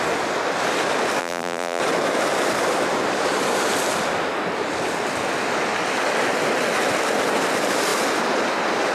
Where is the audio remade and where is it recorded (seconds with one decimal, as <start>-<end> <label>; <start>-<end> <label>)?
0.0-1.2 recorded; 1.2-1.8 remade; 1.8-8.9 recorded